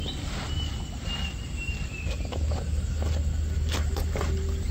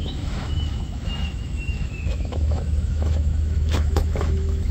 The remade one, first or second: second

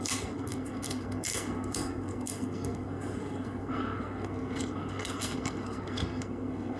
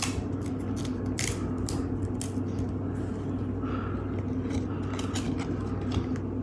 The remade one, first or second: first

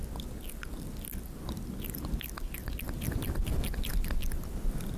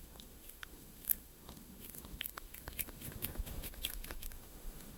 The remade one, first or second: second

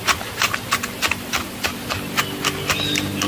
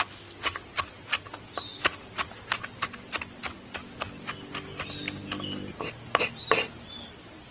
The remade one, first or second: first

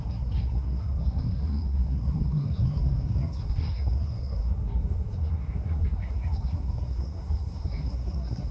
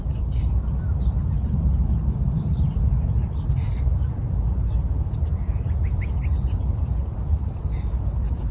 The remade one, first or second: first